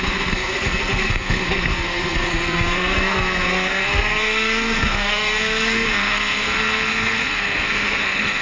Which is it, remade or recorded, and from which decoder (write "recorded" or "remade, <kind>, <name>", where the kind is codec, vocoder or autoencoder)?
remade, codec, SNAC